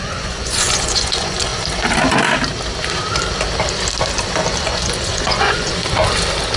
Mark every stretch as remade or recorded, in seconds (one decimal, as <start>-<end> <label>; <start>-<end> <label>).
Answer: 0.0-1.5 remade; 1.5-4.6 recorded; 4.6-5.7 remade; 5.7-6.6 recorded